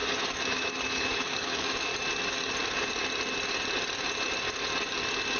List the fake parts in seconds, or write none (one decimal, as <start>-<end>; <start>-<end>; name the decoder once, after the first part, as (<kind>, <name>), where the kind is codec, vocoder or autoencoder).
0.0-1.9 (autoencoder, DAC-VAE)

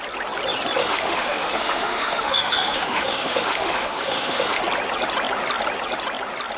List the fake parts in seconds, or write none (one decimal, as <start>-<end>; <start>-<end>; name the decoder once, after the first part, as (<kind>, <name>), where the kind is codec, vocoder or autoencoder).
0.8-4.6 (autoencoder, DAC-VAE)

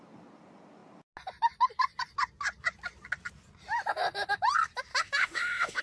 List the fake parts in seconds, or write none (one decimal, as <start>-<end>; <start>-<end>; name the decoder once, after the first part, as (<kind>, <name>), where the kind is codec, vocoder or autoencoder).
4.9-5.8 (autoencoder, DAC-VAE)

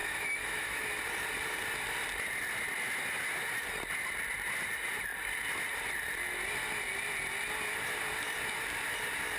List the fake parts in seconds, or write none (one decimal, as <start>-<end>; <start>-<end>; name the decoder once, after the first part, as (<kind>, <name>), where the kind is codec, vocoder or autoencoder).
0.0-0.8 (autoencoder, DAC-VAE)

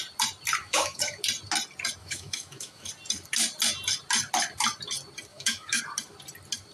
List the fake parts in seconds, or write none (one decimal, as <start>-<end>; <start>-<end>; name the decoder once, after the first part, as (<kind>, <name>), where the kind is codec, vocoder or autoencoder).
0.6-1.2 (autoencoder, DAC-VAE); 2.0-2.9; 5.3-5.8

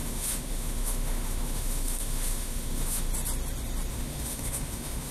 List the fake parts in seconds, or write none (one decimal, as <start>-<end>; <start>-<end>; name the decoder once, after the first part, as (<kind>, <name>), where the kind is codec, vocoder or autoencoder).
0.0-3.1 (autoencoder, DAC-VAE); 3.9-5.1